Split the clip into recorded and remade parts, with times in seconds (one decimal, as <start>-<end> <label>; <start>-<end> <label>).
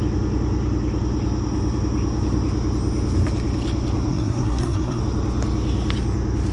0.0-4.1 recorded; 4.1-5.0 remade; 5.0-6.5 recorded